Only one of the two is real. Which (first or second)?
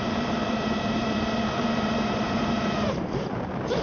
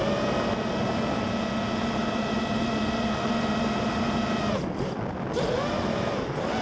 second